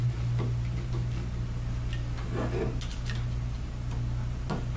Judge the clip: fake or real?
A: real